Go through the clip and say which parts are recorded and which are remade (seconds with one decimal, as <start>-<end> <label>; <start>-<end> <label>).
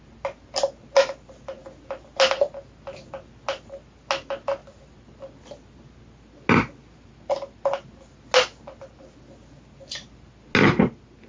0.0-11.3 recorded